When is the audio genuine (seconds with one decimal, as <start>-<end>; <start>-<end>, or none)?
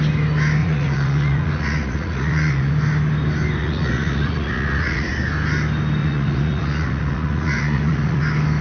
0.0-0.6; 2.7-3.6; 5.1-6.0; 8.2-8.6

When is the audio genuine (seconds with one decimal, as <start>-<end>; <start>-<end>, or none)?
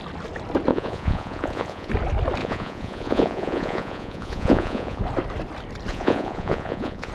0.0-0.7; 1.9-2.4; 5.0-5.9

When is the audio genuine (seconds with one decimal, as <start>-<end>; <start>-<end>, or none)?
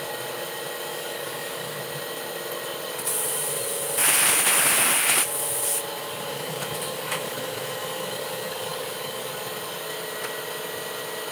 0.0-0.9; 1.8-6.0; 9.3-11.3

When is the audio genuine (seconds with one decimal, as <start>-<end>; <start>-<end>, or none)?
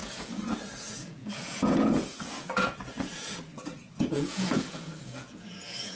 none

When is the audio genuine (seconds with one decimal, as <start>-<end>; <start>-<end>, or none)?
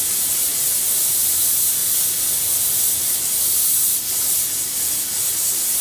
0.5-1.1; 1.8-5.3